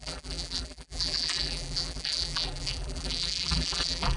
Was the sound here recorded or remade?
remade